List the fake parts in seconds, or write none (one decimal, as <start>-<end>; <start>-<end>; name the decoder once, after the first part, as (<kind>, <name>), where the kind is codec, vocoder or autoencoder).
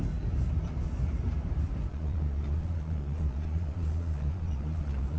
1.9-5.2 (vocoder, Vocos)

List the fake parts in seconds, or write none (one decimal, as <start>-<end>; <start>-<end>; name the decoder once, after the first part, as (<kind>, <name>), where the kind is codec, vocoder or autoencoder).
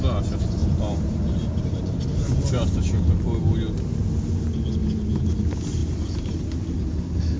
0.6-3.0 (vocoder, BigVGAN v2); 5.8-6.4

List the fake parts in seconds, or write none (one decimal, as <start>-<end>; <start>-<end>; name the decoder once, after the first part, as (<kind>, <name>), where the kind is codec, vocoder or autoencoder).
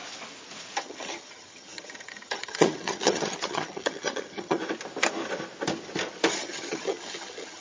0.8-4.6 (vocoder, HiFi-GAN); 6.3-7.6